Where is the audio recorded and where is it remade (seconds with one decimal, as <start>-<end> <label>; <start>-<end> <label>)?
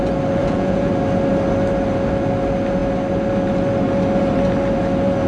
0.0-0.4 recorded; 0.4-0.9 remade; 0.9-5.3 recorded